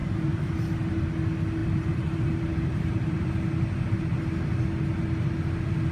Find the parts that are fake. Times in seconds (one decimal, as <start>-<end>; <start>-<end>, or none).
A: 0.0-0.6; 1.6-3.3